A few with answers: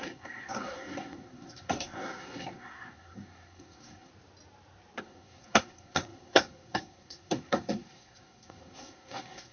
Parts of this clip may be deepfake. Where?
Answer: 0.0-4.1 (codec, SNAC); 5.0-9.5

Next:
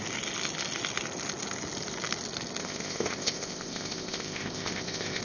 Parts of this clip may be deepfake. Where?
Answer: 2.6-5.2 (codec, ZipCodec)